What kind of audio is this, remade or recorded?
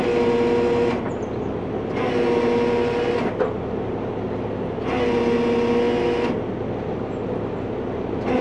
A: recorded